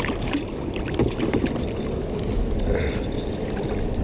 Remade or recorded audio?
recorded